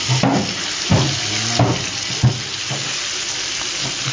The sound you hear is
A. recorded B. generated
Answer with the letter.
A